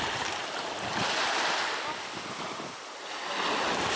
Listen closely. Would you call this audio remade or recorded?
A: recorded